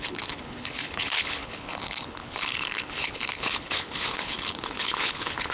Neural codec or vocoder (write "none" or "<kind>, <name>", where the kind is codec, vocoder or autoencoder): codec, HILCodec